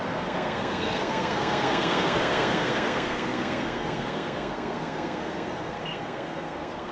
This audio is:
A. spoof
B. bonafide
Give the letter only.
A